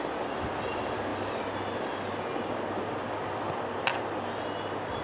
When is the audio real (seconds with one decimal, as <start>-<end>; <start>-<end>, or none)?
0.0-5.0